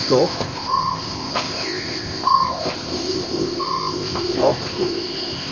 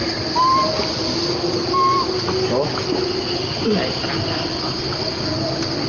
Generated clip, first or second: first